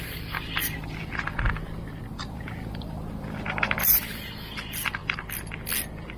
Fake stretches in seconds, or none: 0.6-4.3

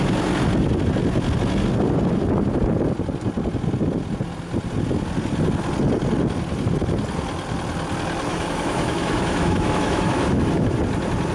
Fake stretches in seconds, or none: 8.3-10.8

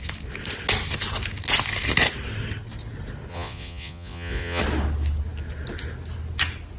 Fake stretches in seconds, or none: 3.3-4.6

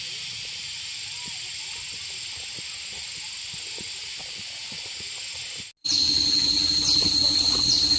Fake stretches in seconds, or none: none

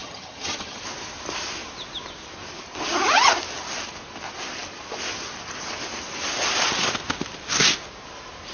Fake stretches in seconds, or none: 0.0-0.8

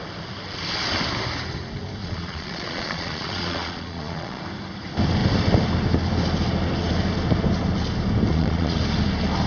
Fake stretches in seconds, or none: 2.0-4.4; 8.3-8.8

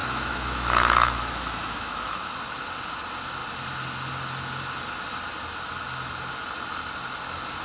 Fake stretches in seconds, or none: 0.0-2.3